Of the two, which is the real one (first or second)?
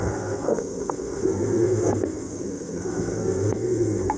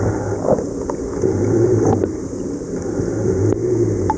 second